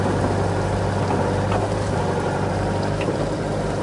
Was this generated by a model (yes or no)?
no